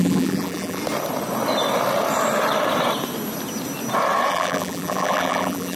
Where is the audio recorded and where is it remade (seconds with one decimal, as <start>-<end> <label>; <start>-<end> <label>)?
0.0-0.8 remade; 0.8-4.3 recorded; 4.3-5.8 remade